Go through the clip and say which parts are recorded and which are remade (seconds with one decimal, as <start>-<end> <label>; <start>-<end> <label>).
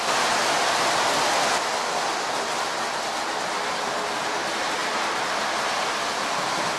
0.0-6.8 recorded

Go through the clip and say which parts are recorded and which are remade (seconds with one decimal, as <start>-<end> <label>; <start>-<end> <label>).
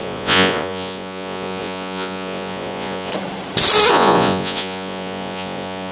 0.0-3.1 remade; 3.1-3.9 recorded; 3.9-5.9 remade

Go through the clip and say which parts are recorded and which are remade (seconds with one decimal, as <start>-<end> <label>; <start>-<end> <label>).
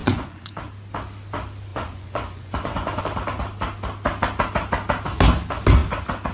0.0-0.6 remade; 0.6-1.7 recorded; 1.7-3.0 remade; 3.0-6.3 recorded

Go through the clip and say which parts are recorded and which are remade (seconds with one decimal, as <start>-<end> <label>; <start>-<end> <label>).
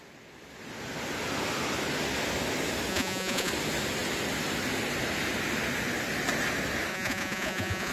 0.0-2.9 recorded; 2.9-3.5 remade; 3.5-6.9 recorded; 6.9-7.9 remade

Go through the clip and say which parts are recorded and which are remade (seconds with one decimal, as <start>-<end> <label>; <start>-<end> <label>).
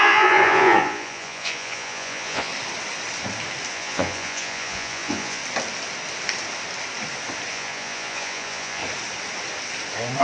0.0-2.5 remade; 2.5-3.7 recorded; 3.7-5.4 remade; 5.4-7.5 recorded; 7.5-8.8 remade; 8.8-10.2 recorded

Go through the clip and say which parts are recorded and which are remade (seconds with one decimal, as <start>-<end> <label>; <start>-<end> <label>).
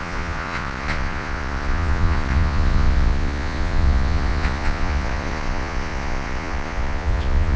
0.0-7.6 remade